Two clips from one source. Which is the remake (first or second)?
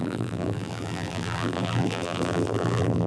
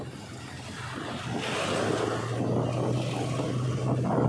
first